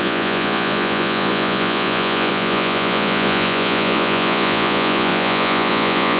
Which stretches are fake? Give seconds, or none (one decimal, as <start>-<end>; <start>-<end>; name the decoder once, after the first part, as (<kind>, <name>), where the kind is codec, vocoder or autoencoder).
0.0-6.2 (vocoder, Vocos)